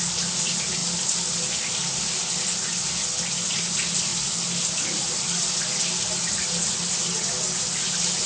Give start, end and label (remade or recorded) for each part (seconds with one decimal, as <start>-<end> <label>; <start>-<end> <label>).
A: 0.0-8.3 recorded